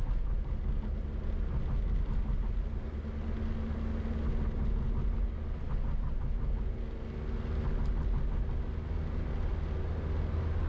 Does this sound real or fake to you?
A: real